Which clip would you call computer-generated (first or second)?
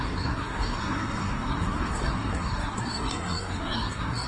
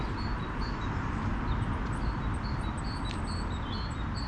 first